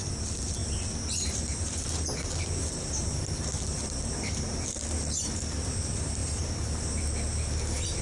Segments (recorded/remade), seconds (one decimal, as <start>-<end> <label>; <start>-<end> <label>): 0.0-0.6 recorded; 0.6-5.4 remade; 5.4-6.2 recorded; 6.2-7.0 remade; 7.0-8.0 recorded